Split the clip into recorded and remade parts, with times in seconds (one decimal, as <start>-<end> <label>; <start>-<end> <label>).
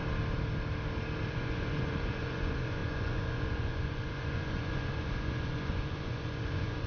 0.0-1.3 recorded; 1.3-6.9 remade